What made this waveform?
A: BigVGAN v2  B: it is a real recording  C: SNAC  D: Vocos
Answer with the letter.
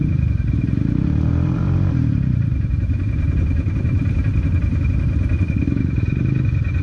A